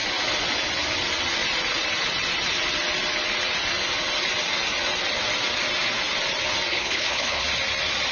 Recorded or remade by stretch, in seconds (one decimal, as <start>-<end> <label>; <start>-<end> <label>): 0.0-6.7 recorded; 6.7-7.4 remade; 7.4-8.1 recorded